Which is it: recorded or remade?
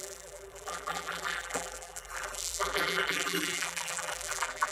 remade